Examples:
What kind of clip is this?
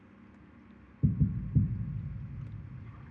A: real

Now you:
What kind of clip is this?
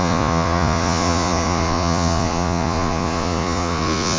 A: fake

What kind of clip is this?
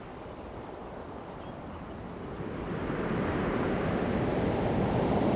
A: real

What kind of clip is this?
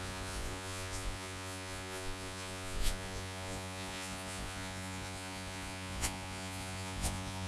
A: fake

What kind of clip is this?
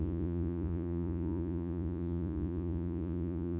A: fake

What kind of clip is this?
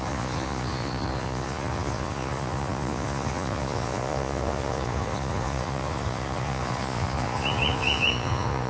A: fake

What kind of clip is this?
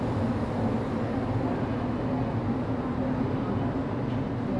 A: real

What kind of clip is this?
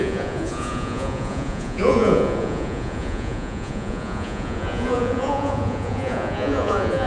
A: fake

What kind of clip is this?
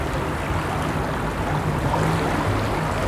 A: real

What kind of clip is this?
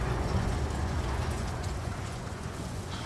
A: fake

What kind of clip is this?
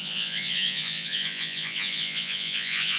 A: fake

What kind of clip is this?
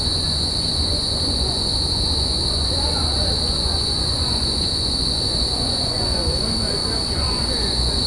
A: fake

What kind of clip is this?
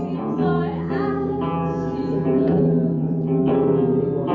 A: fake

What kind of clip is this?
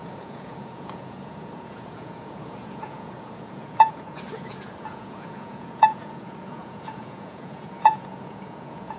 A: fake